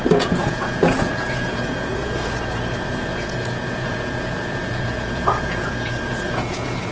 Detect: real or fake fake